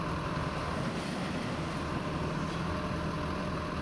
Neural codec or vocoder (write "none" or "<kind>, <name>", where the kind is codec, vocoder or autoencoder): none